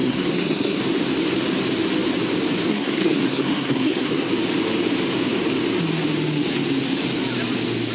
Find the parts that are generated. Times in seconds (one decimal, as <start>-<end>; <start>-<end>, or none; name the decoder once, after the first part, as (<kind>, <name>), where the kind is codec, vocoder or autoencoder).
0.0-0.8 (codec, SNAC); 2.7-4.3